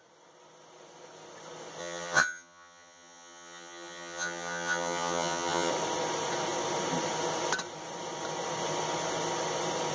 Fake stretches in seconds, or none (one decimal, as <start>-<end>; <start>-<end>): 1.8-5.7